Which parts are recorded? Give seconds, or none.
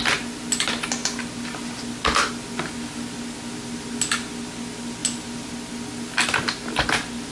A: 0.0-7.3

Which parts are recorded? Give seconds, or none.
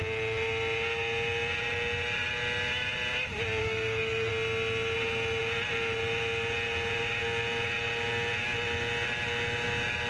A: 0.0-3.6; 4.3-10.1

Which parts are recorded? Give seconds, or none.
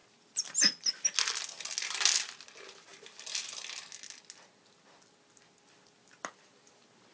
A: 0.0-7.1